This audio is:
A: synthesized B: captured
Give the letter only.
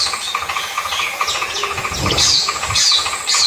A